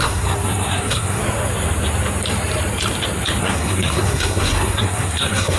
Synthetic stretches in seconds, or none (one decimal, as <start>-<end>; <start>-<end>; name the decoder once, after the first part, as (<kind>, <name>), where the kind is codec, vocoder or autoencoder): 0.0-1.2 (codec, SNAC); 3.4-5.6